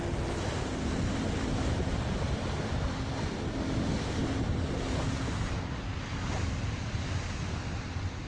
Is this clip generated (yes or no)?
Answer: no